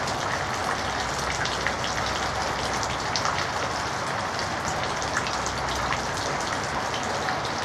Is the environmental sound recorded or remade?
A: recorded